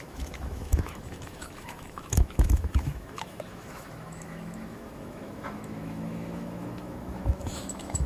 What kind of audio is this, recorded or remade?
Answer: remade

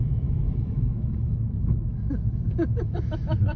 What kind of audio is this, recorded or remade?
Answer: remade